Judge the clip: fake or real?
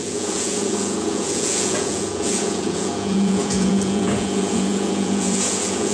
fake